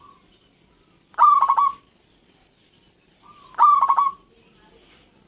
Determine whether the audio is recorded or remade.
recorded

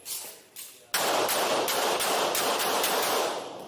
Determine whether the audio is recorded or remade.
recorded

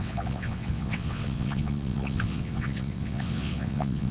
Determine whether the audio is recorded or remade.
remade